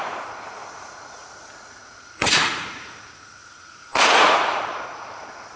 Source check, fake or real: fake